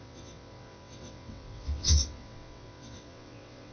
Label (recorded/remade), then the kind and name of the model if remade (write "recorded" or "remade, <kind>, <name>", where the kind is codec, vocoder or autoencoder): remade, vocoder, WaveNeXt